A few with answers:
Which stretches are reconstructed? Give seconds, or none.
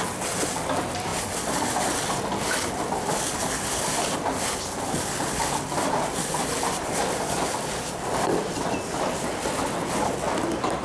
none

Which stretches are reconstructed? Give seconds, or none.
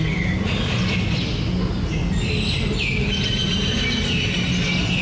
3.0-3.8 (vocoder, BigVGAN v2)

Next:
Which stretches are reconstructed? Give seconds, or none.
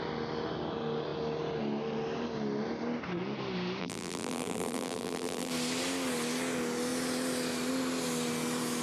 3.8-5.5 (vocoder, BigVGAN v2)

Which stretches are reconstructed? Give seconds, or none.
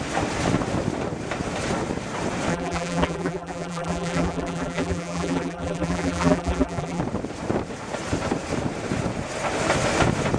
2.5-7.0 (vocoder, BigVGAN v2)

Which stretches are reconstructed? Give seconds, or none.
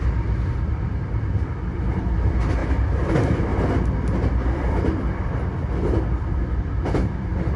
0.0-2.6 (vocoder, BigVGAN v2); 3.1-3.5; 4.3-7.6